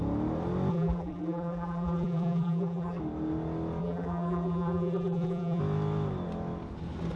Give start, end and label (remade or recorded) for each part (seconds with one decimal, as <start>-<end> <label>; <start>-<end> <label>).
0.0-0.7 recorded; 0.7-3.0 remade; 3.0-3.8 recorded; 3.8-5.6 remade; 5.6-7.2 recorded